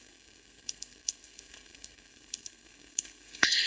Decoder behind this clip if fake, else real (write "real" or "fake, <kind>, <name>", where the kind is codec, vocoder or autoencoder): fake, codec, SNAC